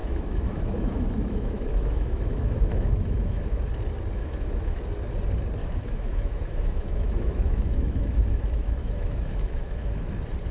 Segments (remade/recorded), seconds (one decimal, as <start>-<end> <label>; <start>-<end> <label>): 0.0-3.6 remade; 3.6-4.2 recorded; 4.2-4.8 remade; 4.8-5.6 recorded; 5.6-10.1 remade; 10.1-10.5 recorded

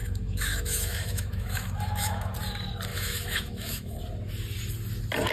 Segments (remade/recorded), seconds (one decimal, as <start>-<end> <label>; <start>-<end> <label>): 0.0-2.3 remade; 2.3-2.9 recorded; 2.9-4.0 remade; 4.0-5.3 recorded

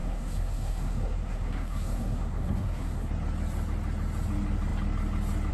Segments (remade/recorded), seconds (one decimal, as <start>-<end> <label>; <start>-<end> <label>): 0.0-3.1 remade; 3.1-5.5 recorded

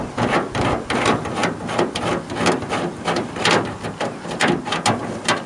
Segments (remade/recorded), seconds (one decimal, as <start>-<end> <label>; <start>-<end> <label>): 0.0-5.5 recorded

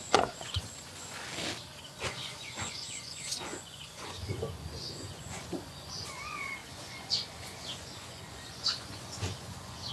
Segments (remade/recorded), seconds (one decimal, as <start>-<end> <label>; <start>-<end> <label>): 0.0-1.3 remade; 1.3-1.8 recorded; 1.8-9.9 remade

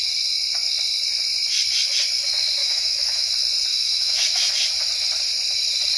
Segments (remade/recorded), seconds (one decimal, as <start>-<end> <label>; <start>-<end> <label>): 0.0-2.6 recorded; 2.6-3.3 remade; 3.3-3.7 recorded; 3.7-4.5 remade; 4.5-6.0 recorded

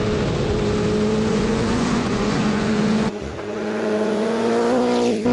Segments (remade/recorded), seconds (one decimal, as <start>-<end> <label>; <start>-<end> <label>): 0.0-1.3 recorded; 1.3-4.5 remade; 4.5-5.3 recorded

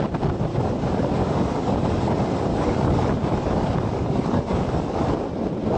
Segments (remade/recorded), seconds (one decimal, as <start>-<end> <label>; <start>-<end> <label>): 0.0-0.5 recorded; 0.5-2.1 remade; 2.1-2.5 recorded; 2.5-5.0 remade; 5.0-5.8 recorded